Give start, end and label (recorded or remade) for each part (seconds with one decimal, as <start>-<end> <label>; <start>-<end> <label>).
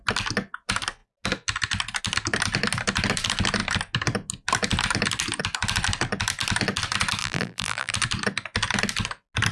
0.0-7.2 recorded; 7.2-7.9 remade; 7.9-9.5 recorded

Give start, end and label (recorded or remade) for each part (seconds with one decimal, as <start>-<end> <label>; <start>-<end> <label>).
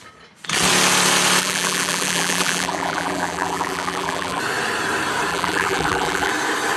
0.0-1.4 recorded; 1.4-4.4 remade; 4.4-5.3 recorded; 5.3-6.3 remade; 6.3-6.8 recorded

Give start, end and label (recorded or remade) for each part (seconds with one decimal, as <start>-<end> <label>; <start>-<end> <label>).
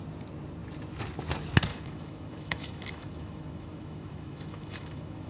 0.0-1.7 recorded; 1.7-5.3 remade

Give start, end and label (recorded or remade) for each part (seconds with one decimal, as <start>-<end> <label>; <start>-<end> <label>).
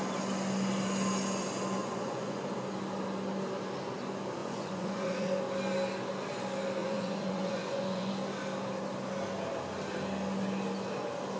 0.0-1.8 recorded; 1.8-2.4 remade; 2.4-4.4 recorded; 4.4-5.4 remade; 5.4-6.8 recorded; 6.8-8.1 remade; 8.1-11.4 recorded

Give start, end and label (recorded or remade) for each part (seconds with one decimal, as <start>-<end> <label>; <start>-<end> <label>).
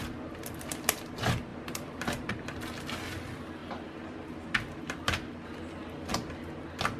0.0-7.0 recorded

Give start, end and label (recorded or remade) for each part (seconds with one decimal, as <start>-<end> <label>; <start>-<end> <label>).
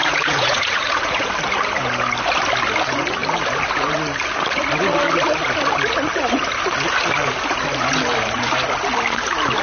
0.0-1.3 remade; 1.3-9.6 recorded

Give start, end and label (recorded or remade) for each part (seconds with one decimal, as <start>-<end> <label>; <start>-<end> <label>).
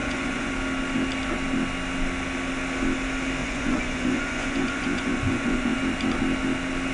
0.0-0.5 remade; 0.5-3.4 recorded; 3.4-5.7 remade; 5.7-6.9 recorded